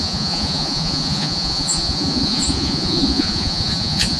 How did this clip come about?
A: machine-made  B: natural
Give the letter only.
A